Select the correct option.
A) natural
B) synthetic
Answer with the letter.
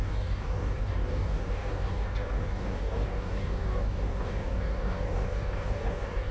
B